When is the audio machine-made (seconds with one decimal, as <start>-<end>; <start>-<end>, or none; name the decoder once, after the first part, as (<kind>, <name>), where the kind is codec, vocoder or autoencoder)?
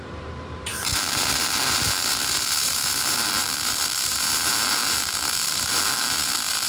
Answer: 0.0-6.7 (vocoder, BigVGAN v2)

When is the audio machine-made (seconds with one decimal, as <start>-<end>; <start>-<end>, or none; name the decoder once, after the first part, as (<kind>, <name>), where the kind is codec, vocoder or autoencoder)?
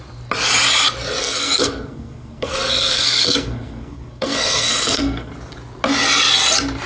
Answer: 1.2-5.3 (codec, SNAC)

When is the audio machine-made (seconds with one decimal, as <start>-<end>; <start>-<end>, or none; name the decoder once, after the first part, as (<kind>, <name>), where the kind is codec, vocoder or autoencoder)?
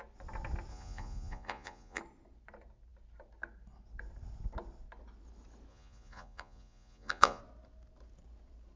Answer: 0.7-2.0 (vocoder, Vocos); 5.7-7.4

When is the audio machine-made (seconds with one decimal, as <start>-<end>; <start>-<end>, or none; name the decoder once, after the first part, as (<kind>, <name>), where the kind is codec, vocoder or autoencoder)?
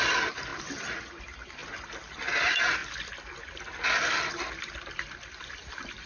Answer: 0.0-2.8 (vocoder, BigVGAN v2); 4.3-6.1